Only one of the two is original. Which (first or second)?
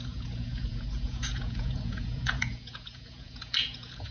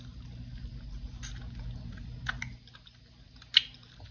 second